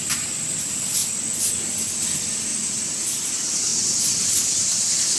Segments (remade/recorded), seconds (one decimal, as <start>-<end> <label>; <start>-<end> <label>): 0.0-5.2 recorded